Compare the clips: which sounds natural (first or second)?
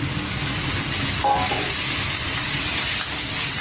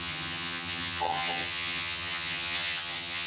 first